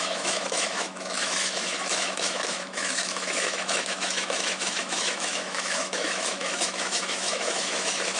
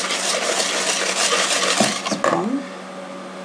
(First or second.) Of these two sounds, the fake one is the first